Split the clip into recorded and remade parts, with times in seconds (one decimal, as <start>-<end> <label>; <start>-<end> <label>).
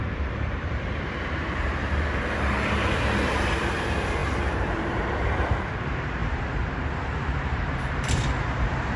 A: 0.0-9.0 remade